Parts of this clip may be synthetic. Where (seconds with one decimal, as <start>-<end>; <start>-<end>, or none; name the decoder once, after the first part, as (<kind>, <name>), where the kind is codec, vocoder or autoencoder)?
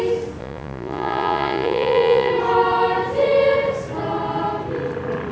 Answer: 0.4-2.3 (vocoder, Vocos)